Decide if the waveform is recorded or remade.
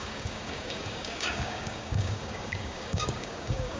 remade